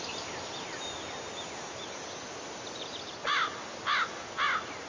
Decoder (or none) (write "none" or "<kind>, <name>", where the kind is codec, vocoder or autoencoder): none